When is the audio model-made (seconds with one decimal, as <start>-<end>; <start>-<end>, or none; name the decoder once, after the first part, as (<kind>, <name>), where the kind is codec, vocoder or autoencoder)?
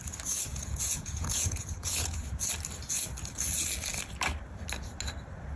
0.5-2.5 (vocoder, Vocos)